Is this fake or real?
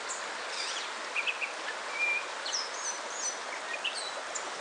real